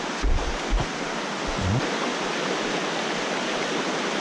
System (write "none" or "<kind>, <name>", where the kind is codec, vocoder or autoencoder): none